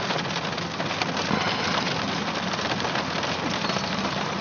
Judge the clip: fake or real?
real